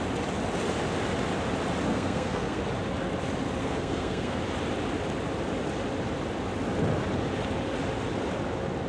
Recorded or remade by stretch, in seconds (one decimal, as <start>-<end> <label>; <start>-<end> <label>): 0.0-1.9 recorded; 1.9-2.6 remade; 2.6-3.6 recorded; 3.6-4.4 remade; 4.4-8.9 recorded